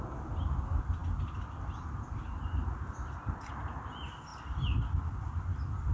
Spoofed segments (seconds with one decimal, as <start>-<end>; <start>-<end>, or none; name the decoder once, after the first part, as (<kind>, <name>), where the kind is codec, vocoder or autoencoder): none